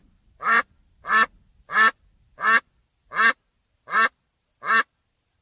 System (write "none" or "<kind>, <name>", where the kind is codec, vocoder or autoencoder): none